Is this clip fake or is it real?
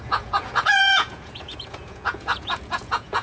fake